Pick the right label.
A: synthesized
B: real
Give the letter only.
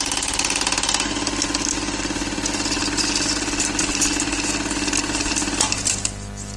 B